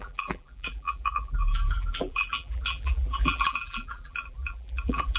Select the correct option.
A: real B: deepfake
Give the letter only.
B